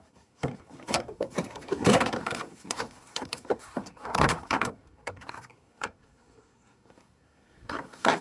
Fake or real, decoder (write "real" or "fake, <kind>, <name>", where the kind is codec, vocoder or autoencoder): fake, codec, SNAC